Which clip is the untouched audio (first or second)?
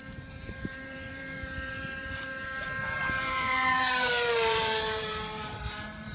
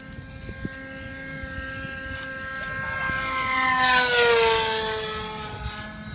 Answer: second